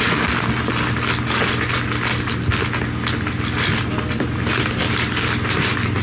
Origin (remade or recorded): recorded